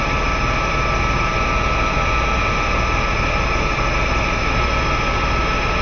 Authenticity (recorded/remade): recorded